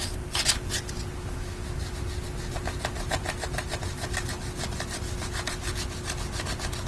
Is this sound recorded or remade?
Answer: recorded